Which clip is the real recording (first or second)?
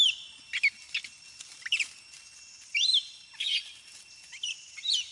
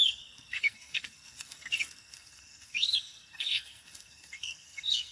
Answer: first